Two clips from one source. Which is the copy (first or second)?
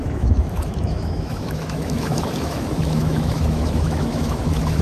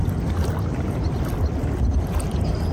first